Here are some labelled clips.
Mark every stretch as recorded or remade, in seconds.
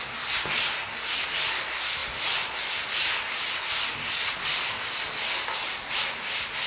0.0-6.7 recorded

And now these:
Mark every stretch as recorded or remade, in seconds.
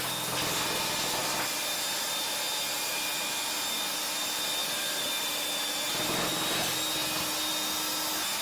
0.0-8.4 recorded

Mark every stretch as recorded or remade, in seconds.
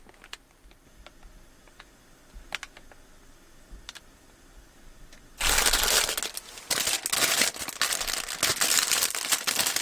0.0-8.5 recorded; 8.5-9.3 remade; 9.3-9.8 recorded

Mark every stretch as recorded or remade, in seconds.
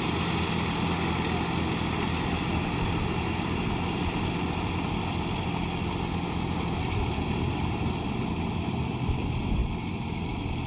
0.0-10.7 recorded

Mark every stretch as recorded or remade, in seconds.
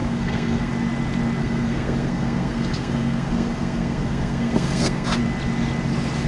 0.0-0.7 remade; 0.7-1.4 recorded; 1.4-5.2 remade; 5.2-6.3 recorded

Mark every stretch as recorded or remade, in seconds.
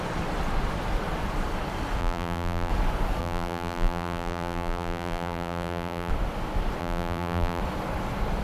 0.0-2.0 recorded; 2.0-2.7 remade; 2.7-3.2 recorded; 3.2-6.1 remade; 6.1-6.8 recorded; 6.8-7.6 remade; 7.6-8.4 recorded